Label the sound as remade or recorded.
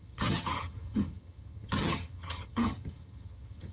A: remade